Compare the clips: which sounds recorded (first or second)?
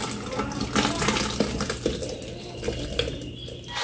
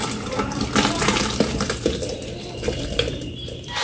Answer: first